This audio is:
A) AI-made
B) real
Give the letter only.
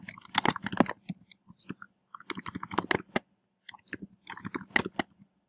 B